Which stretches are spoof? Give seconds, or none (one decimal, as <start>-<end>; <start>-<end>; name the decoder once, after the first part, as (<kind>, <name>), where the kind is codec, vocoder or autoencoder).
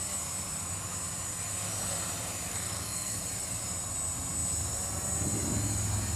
2.5-3.2 (codec, SNAC)